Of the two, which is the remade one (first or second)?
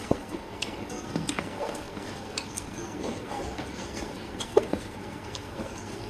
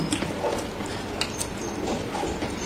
first